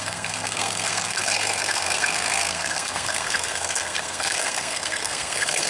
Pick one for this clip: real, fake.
fake